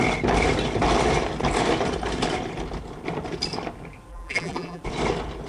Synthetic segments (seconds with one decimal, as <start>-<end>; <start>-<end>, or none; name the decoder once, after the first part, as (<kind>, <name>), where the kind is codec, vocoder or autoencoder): 4.1-4.8 (vocoder, BigVGAN v2)